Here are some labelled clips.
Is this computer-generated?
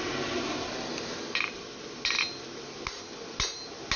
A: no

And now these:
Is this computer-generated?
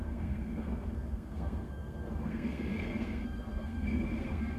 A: yes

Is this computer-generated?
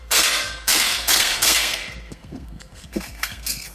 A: yes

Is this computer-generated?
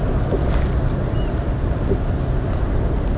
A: no